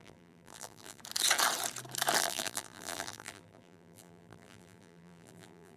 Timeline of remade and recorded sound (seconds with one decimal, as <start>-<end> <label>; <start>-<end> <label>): 0.0-1.0 remade; 1.0-2.2 recorded; 2.2-5.8 remade